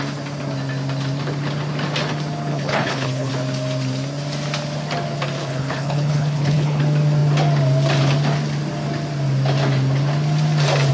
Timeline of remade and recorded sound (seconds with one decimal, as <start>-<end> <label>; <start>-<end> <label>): 0.0-2.5 recorded; 2.5-3.3 remade; 3.3-5.4 recorded; 5.4-6.8 remade; 6.8-10.9 recorded